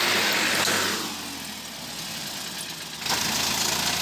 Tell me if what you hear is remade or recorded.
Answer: recorded